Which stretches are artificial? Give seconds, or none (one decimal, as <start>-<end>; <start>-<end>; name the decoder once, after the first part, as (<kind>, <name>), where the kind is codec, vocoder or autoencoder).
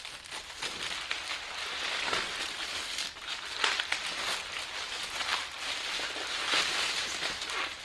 none